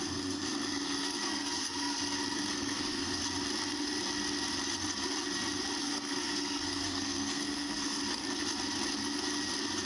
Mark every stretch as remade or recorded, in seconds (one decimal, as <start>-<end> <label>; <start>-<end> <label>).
0.0-2.0 remade; 2.0-2.5 recorded; 2.5-3.2 remade; 3.2-5.8 recorded; 5.8-8.0 remade; 8.0-9.9 recorded